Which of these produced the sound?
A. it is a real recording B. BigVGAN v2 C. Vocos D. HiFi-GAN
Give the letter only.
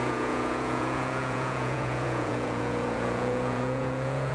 C